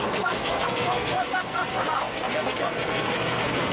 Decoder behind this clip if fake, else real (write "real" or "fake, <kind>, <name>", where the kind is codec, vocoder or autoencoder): fake, codec, SNAC